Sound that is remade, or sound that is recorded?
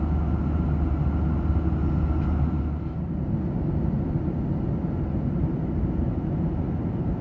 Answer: recorded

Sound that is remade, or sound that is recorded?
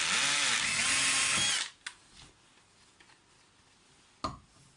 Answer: recorded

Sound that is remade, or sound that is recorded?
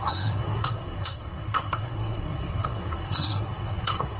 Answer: remade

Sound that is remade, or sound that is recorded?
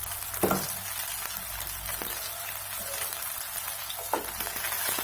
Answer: recorded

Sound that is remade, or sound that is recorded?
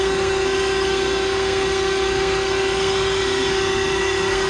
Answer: remade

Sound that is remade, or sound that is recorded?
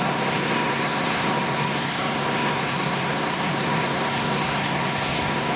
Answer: remade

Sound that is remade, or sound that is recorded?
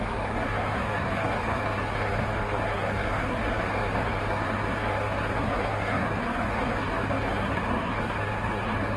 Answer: remade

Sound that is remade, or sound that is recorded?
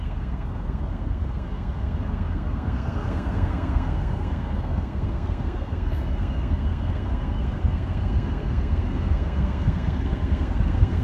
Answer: remade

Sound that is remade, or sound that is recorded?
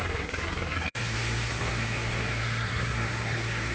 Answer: remade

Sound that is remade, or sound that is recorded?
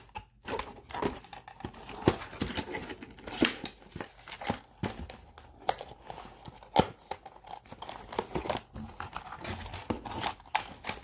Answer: recorded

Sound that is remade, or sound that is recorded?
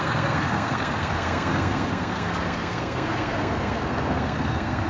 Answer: remade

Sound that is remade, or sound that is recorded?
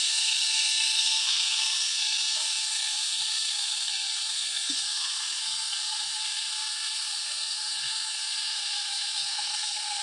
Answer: remade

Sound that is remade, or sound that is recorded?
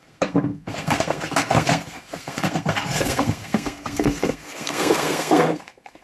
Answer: remade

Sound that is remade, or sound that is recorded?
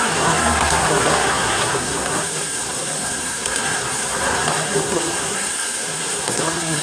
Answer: remade